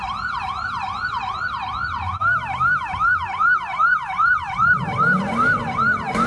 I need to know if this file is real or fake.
fake